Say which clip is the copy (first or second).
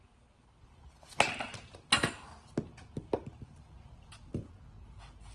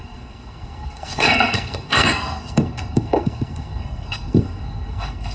second